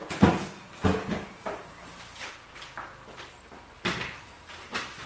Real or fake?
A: real